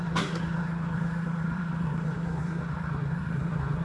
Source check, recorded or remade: remade